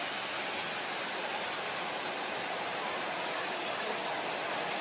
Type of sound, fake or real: real